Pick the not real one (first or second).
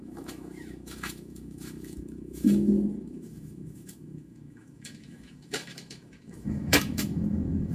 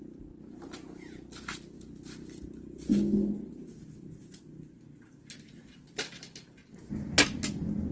first